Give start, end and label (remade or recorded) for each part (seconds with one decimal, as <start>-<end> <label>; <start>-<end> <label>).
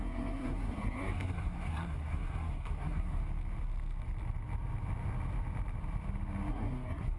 0.0-3.2 remade; 3.2-6.5 recorded; 6.5-7.2 remade